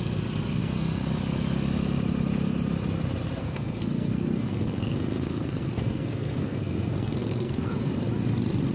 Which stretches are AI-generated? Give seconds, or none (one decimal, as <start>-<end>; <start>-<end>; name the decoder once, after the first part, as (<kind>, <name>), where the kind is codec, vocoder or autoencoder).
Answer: 0.6-1.1 (codec, SNAC); 3.4-7.9